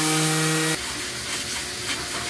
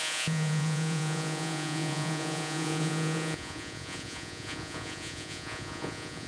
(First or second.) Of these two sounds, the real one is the first